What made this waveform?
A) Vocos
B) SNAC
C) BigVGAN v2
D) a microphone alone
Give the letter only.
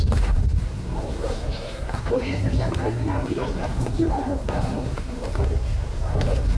B